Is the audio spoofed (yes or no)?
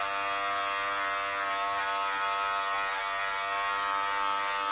no